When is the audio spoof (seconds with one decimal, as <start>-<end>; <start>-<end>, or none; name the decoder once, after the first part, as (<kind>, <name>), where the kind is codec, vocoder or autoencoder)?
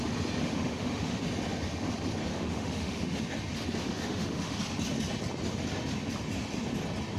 0.4-1.2 (autoencoder, DAC-VAE); 2.3-3.2; 3.8-4.6